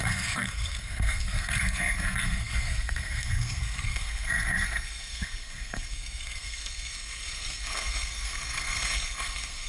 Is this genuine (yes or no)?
no